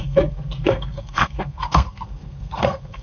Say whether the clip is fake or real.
fake